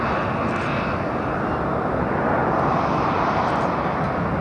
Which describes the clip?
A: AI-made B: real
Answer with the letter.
B